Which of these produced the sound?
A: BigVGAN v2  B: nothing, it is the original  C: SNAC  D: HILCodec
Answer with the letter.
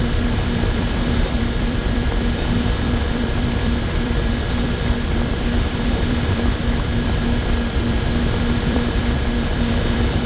A